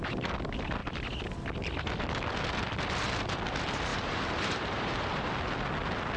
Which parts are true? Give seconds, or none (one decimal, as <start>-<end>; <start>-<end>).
0.0-3.9; 5.3-6.2